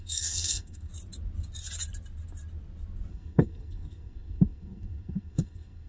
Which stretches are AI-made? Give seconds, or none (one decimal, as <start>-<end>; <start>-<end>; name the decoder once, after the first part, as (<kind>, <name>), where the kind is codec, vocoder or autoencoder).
0.0-0.9 (codec, SNAC); 3.1-5.9